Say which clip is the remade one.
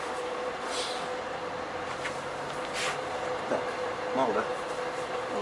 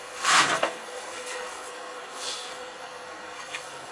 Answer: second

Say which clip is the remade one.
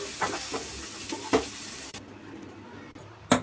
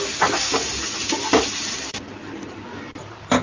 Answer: second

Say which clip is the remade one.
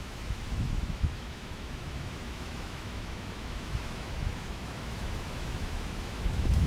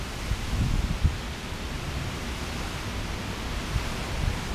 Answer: first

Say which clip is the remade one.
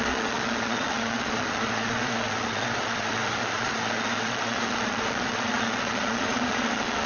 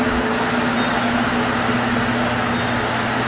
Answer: first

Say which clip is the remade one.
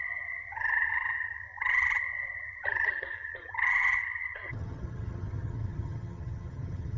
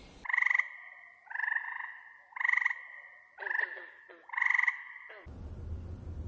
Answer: first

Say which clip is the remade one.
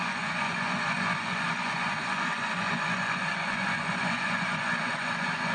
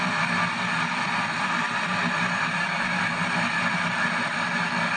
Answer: first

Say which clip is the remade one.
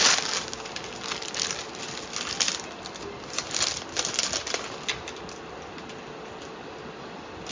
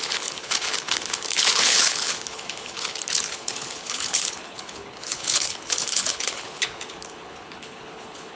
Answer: second